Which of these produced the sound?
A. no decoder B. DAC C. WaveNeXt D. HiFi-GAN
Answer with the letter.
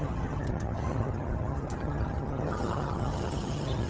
D